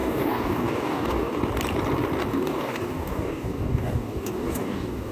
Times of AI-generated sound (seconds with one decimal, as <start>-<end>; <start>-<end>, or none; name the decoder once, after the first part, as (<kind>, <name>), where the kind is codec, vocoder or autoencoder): 0.0-1.4 (codec, DAC); 2.3-5.1